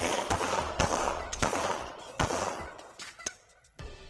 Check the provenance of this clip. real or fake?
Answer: fake